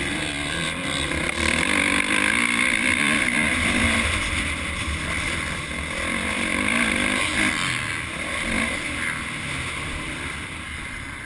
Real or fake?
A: fake